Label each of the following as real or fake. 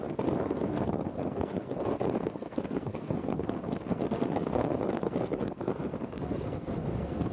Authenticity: fake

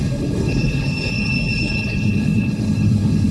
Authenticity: fake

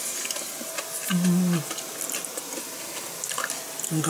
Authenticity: real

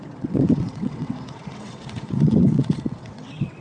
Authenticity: fake